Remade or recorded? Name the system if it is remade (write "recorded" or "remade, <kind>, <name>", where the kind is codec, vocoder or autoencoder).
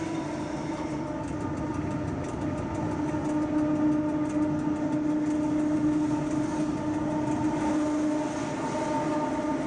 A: recorded